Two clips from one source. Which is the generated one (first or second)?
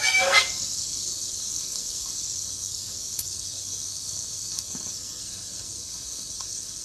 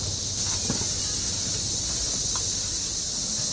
first